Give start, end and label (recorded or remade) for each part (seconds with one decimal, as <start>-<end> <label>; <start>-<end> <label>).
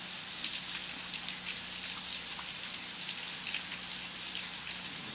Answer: 0.0-5.1 recorded